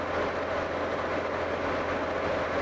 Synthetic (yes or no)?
no